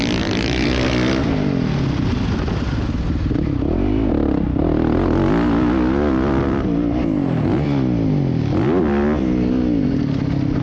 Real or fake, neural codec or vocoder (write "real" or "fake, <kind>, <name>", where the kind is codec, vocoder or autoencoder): real